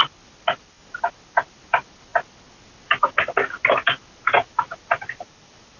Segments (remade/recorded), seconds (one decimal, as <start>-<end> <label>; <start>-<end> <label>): 0.0-5.8 recorded